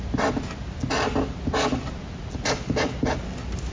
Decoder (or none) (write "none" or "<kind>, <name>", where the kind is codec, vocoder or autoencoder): none